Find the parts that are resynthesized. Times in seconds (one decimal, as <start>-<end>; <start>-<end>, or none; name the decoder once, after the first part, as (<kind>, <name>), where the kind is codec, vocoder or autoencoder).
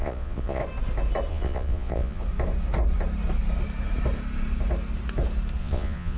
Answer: 0.0-0.6 (vocoder, Vocos); 1.3-2.2; 5.6-6.2